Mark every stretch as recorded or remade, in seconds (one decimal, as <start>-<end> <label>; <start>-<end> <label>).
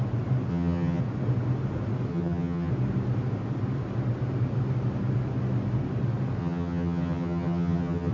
0.0-0.5 recorded; 0.5-1.0 remade; 1.0-2.1 recorded; 2.1-2.7 remade; 2.7-6.4 recorded; 6.4-8.1 remade